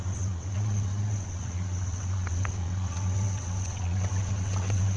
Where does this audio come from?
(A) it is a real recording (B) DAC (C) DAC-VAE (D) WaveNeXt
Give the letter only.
D